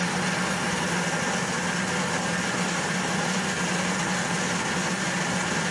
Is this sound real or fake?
real